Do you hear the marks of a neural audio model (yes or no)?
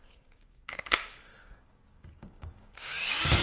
yes